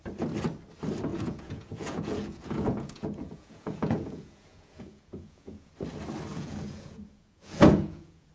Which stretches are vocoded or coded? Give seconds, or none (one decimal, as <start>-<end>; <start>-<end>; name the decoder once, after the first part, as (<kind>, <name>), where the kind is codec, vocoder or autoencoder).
1.1-5.7 (vocoder, Vocos); 6.3-8.3